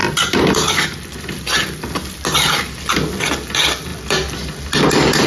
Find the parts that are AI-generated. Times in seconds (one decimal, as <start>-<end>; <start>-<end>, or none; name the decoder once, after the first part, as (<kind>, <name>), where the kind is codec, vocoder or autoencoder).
none